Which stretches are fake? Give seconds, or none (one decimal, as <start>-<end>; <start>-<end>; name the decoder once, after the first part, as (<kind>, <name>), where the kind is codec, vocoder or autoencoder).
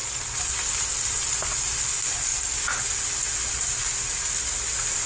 none